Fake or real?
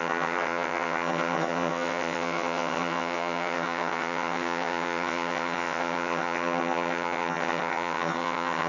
fake